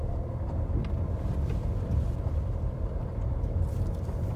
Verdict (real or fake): fake